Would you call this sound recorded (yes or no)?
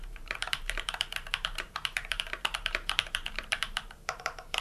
no